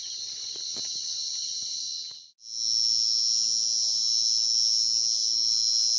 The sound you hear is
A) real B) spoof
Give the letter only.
A